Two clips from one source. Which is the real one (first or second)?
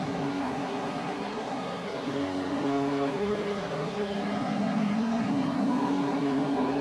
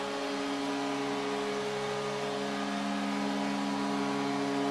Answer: second